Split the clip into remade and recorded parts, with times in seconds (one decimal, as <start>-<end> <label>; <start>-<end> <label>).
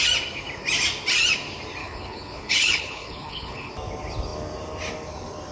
0.0-1.8 recorded; 1.8-3.7 remade; 3.7-5.5 recorded